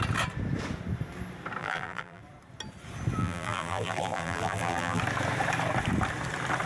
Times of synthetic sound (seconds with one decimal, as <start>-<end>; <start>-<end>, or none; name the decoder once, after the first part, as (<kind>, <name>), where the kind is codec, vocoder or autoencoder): 1.6-2.2 (vocoder, BigVGAN v2); 3.2-5.0